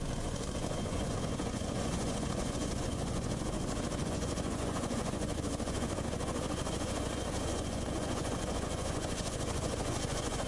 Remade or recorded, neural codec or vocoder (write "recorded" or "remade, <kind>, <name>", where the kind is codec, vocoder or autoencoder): remade, vocoder, Vocos